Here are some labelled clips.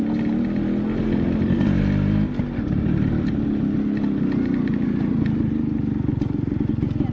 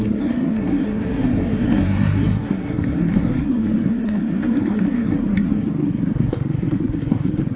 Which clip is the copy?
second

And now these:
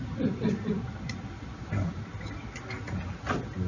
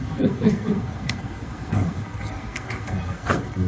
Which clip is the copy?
second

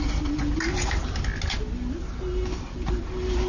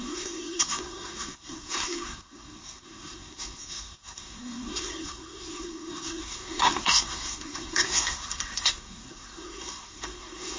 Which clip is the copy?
second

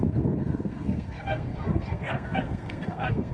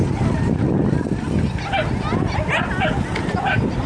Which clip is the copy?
first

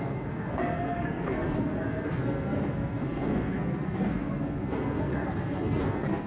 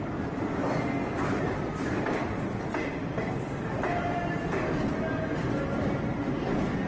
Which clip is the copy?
first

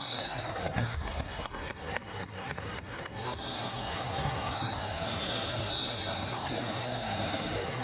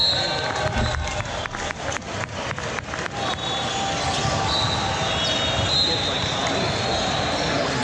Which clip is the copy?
first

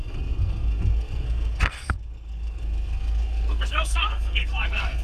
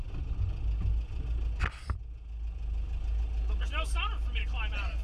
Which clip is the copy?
first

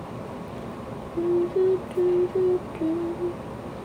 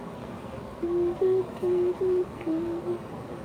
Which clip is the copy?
second